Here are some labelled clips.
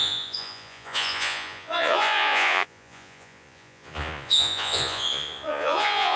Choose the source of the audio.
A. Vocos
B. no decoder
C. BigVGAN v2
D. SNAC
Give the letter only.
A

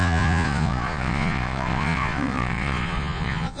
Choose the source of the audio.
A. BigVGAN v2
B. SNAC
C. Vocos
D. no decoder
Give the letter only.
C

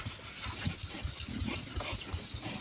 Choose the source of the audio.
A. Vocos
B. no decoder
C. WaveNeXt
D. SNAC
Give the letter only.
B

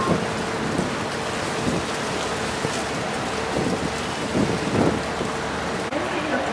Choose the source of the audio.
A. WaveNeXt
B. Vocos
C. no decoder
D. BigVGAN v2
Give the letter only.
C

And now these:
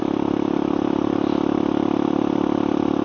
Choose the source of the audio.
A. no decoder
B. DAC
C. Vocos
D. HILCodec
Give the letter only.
A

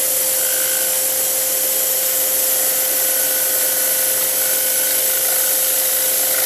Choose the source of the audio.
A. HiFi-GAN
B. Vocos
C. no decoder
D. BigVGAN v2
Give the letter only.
C